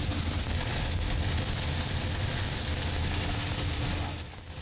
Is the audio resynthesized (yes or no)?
no